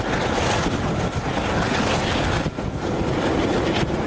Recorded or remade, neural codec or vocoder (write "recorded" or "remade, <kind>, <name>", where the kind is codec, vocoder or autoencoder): recorded